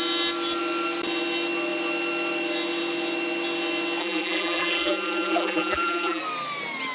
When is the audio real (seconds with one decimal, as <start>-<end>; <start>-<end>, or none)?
0.0-4.0; 6.2-6.9